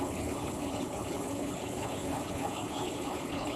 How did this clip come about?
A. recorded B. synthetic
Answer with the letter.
B